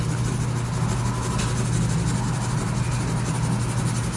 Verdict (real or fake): real